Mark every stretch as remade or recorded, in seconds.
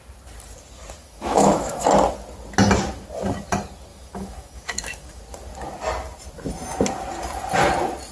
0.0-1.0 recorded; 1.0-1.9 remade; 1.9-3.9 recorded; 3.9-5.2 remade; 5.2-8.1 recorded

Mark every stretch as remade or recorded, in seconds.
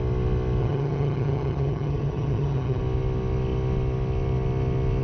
0.0-0.6 recorded; 0.6-2.8 remade; 2.8-5.0 recorded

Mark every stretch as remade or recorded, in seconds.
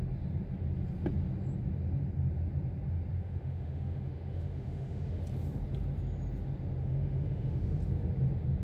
0.0-3.2 recorded; 3.2-5.2 remade; 5.2-6.8 recorded; 6.8-7.8 remade; 7.8-8.6 recorded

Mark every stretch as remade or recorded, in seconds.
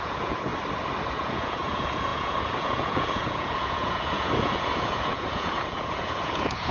0.0-0.5 remade; 0.5-1.1 recorded; 1.1-6.7 remade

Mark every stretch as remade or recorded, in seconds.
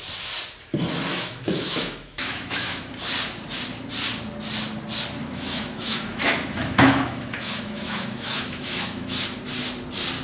0.0-1.1 recorded; 1.1-2.9 remade; 2.9-5.2 recorded; 5.2-9.2 remade; 9.2-10.2 recorded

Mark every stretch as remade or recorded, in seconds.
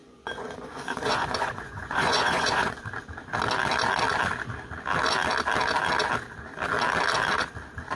0.0-2.8 remade; 2.8-8.0 recorded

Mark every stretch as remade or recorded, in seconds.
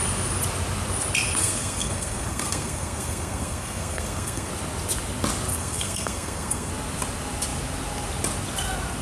0.0-1.4 recorded; 1.4-4.5 remade; 4.5-5.5 recorded; 5.5-6.7 remade; 6.7-9.0 recorded